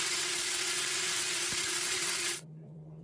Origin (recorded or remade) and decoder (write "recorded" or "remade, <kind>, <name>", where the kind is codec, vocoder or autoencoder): remade, vocoder, WaveNeXt